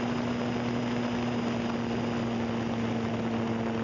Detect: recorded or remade recorded